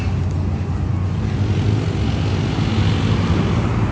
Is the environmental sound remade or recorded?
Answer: recorded